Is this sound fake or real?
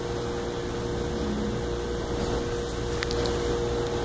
real